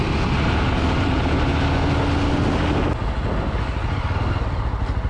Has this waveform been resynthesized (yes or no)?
no